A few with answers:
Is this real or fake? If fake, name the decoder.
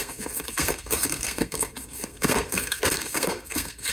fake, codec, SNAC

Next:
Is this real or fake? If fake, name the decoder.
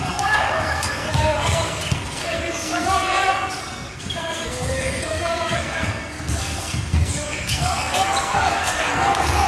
fake, codec, SNAC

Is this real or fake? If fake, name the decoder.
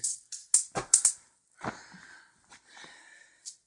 real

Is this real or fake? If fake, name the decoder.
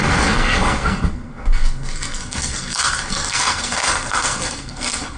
fake, codec, SNAC